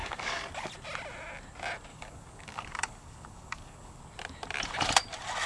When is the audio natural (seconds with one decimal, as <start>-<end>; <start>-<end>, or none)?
0.7-1.9; 4.0-5.5